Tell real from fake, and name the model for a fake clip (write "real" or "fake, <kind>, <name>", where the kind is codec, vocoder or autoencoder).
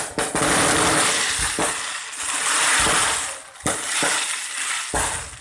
real